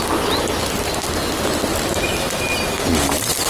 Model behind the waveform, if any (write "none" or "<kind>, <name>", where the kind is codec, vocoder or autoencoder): none